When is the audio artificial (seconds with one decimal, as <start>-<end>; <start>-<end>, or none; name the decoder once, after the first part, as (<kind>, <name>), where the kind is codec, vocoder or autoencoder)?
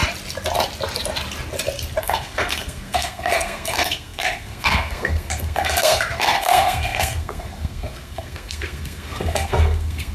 2.0-10.1 (codec, SNAC)